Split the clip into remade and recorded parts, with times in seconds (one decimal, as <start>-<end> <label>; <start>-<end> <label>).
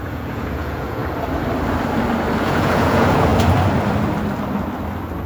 0.0-1.0 remade; 1.0-2.4 recorded; 2.4-3.3 remade; 3.3-5.3 recorded